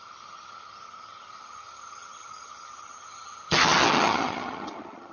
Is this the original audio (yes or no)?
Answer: no